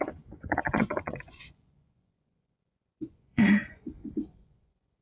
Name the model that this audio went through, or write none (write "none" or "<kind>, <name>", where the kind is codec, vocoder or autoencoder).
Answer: vocoder, Vocos